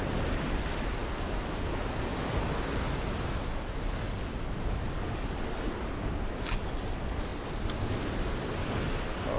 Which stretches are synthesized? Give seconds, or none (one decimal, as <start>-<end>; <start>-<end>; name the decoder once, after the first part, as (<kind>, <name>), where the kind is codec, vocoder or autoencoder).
none